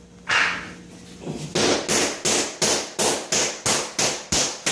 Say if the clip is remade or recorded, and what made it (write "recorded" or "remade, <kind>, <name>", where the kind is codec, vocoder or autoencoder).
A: recorded